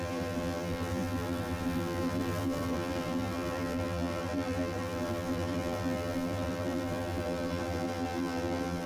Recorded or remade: remade